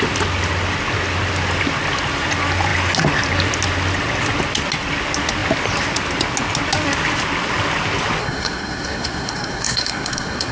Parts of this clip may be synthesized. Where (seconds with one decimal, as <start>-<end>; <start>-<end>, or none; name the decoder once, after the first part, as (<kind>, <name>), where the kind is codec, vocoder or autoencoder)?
8.2-10.5 (codec, SNAC)